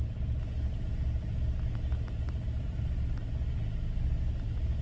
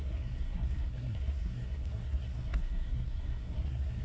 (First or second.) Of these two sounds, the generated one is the second